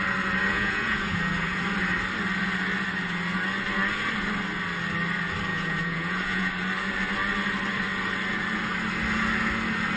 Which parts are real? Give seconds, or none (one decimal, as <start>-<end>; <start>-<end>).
0.0-0.5; 1.6-5.5; 6.5-10.0